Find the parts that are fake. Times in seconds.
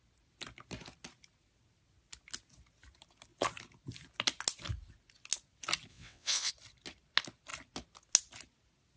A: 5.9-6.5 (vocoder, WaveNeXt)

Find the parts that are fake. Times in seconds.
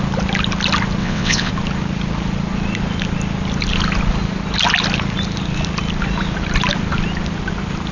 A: 1.0-1.5 (vocoder, WaveNeXt)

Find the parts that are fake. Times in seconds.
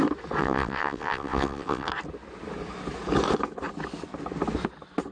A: 0.4-1.9 (vocoder, WaveNeXt)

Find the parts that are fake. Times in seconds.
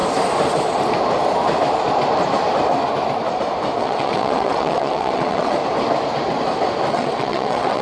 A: 3.8-5.6 (vocoder, WaveNeXt); 6.9-7.8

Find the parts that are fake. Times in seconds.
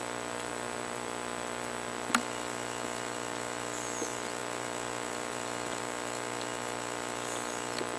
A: none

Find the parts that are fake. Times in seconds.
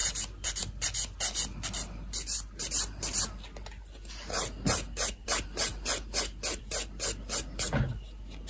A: none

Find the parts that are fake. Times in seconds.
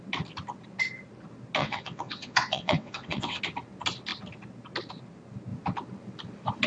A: 1.6-3.4 (vocoder, WaveNeXt)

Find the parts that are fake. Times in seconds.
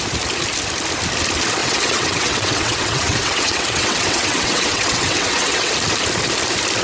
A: 1.6-5.7 (vocoder, WaveNeXt)